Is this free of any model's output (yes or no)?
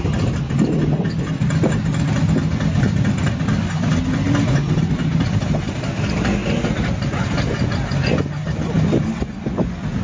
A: yes